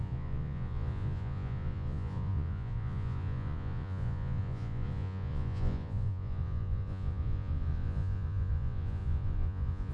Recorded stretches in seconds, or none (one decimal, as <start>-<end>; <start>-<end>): none